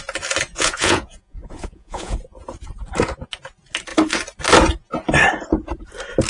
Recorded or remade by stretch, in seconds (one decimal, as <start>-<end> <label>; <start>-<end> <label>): 0.0-0.5 recorded; 0.5-2.2 remade; 2.2-6.3 recorded